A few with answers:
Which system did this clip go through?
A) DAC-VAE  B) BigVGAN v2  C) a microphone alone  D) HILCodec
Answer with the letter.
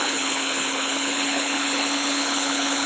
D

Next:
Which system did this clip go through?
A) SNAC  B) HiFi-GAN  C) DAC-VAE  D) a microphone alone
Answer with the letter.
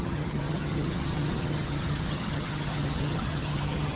B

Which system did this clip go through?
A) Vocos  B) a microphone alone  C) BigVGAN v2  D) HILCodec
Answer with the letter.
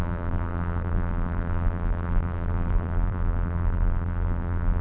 C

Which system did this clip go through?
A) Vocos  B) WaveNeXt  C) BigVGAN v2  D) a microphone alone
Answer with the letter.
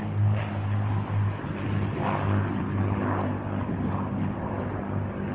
D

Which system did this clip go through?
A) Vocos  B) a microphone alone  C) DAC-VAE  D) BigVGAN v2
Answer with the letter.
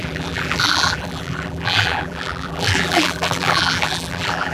D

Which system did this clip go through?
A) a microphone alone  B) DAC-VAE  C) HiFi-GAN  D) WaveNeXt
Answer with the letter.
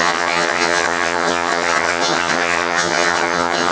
C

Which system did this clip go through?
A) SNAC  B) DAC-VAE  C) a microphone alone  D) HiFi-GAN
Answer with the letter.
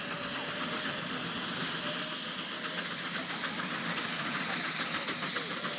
C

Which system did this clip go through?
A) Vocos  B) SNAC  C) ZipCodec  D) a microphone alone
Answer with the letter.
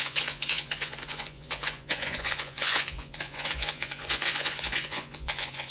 A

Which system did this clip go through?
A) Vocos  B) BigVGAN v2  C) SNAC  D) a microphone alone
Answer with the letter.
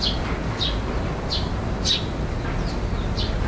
D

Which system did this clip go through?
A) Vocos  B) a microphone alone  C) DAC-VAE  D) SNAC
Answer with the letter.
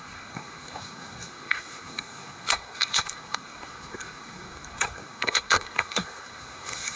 D